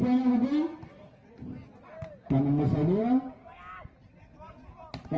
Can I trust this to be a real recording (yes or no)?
yes